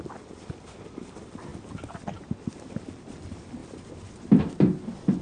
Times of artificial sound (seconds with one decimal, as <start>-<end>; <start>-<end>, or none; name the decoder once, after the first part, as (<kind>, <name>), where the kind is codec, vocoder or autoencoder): 3.6-4.4 (vocoder, BigVGAN v2)